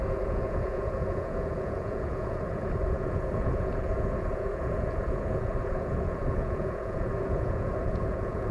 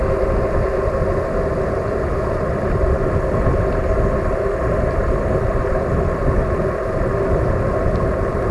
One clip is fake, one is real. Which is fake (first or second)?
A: first